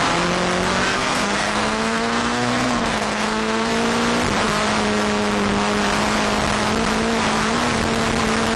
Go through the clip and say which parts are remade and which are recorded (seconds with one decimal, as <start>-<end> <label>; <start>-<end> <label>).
0.0-0.9 recorded; 0.9-3.7 remade; 3.7-8.6 recorded